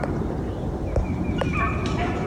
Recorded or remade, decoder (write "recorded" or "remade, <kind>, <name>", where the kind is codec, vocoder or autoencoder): remade, vocoder, BigVGAN v2